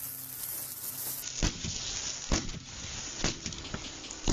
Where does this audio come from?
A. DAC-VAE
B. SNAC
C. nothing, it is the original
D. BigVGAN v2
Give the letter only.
C